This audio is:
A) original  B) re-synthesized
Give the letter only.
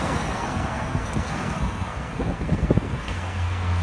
B